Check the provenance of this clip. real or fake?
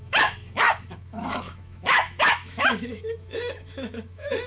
fake